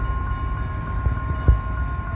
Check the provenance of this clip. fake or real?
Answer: real